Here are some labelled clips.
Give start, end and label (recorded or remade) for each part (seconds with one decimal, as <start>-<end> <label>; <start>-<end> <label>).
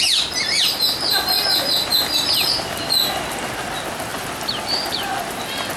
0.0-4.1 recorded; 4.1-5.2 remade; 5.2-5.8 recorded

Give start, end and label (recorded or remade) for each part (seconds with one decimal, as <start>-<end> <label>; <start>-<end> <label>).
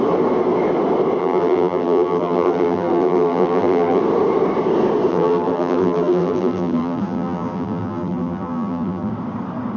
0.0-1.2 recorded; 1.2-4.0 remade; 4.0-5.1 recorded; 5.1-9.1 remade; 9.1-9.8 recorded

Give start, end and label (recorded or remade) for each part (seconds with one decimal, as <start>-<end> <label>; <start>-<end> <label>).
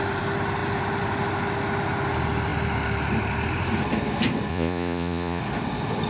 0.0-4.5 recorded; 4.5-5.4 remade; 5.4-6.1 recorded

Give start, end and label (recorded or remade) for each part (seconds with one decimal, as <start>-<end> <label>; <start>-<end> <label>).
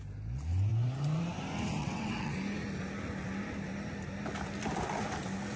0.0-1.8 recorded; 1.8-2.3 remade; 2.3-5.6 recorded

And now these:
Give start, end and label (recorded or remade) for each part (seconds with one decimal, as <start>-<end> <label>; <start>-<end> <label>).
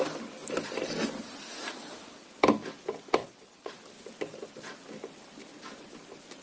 0.0-3.2 recorded; 3.2-3.7 remade; 3.7-6.4 recorded